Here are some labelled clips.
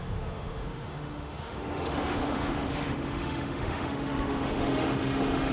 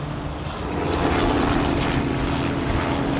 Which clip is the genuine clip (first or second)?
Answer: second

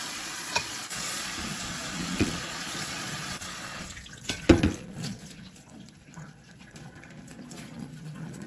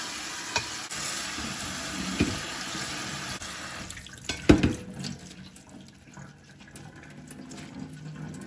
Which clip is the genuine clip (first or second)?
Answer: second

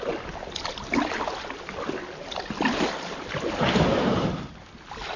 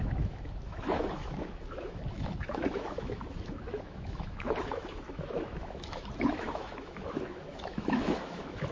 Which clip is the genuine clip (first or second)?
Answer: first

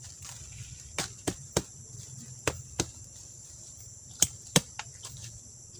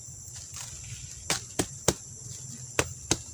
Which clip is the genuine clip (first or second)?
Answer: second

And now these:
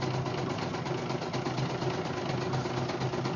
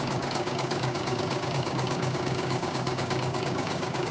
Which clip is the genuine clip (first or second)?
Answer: first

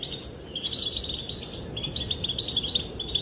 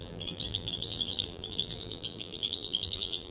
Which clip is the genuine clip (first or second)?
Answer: first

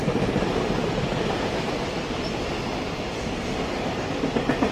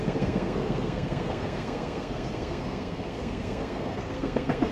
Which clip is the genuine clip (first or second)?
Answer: first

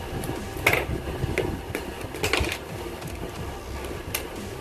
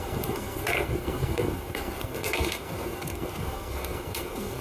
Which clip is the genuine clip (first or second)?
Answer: first